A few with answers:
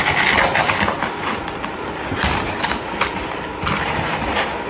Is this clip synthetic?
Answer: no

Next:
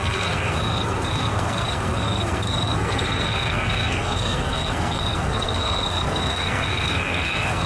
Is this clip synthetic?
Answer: yes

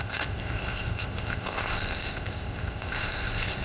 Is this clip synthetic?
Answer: yes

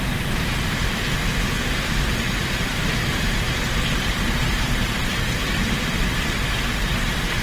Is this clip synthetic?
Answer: yes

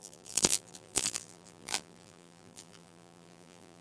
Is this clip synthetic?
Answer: yes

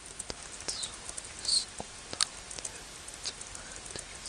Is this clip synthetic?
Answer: no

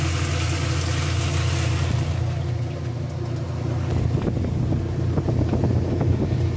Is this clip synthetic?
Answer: no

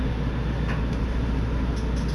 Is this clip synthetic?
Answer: no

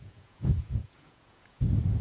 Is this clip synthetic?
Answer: yes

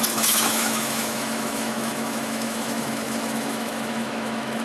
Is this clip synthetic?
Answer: yes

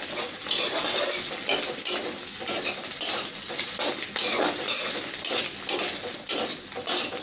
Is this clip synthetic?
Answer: no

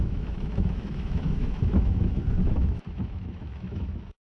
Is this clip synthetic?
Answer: yes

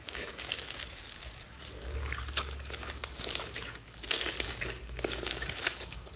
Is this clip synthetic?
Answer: yes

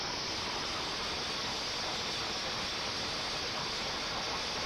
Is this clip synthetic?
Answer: no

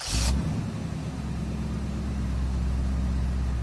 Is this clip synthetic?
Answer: no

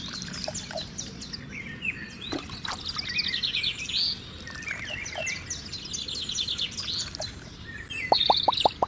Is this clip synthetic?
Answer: no